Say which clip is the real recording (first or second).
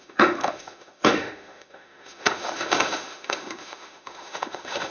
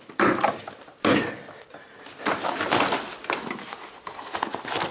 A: second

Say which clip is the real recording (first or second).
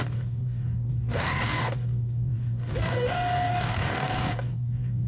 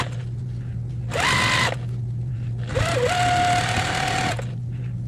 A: second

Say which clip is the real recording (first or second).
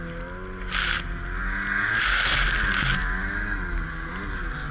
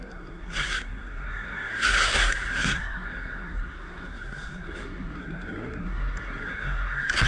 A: first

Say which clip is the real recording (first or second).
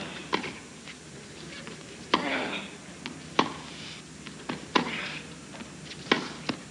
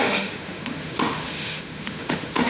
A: first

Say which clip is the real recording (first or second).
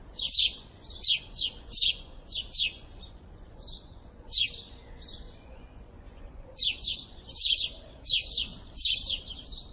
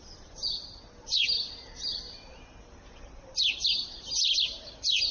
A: second